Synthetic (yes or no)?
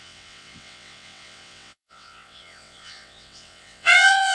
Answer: yes